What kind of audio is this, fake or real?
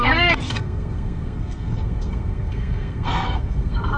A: fake